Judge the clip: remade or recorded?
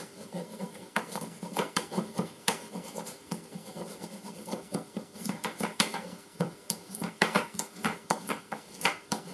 remade